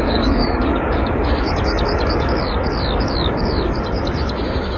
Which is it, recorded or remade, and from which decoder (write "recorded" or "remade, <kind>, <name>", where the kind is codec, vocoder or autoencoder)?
remade, codec, DAC